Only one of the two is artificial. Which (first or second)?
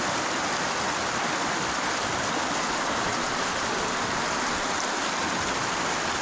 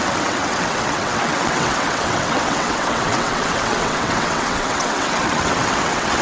second